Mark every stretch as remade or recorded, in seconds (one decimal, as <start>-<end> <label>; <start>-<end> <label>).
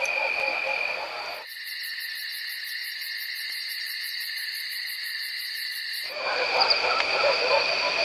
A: 0.0-2.8 recorded; 2.8-7.4 remade; 7.4-8.0 recorded